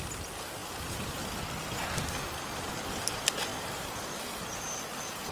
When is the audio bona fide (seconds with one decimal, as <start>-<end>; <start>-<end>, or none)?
0.0-5.3